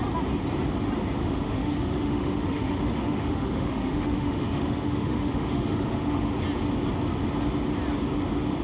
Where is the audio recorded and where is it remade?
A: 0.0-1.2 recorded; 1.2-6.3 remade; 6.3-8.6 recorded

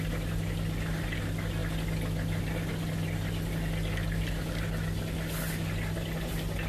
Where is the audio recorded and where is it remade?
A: 0.0-6.7 recorded

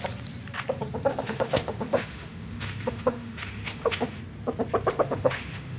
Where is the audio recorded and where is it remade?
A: 0.0-1.1 recorded; 1.1-4.2 remade; 4.2-4.9 recorded; 4.9-5.8 remade

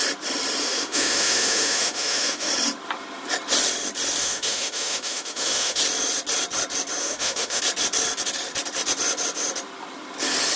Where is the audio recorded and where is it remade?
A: 0.0-0.6 recorded; 0.6-2.5 remade; 2.5-4.2 recorded; 4.2-5.8 remade; 5.8-7.0 recorded; 7.0-7.6 remade; 7.6-10.6 recorded